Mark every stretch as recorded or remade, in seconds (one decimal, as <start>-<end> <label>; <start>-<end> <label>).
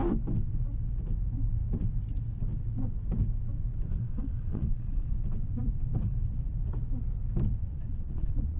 0.0-3.9 recorded; 3.9-5.1 remade; 5.1-7.6 recorded; 7.6-8.6 remade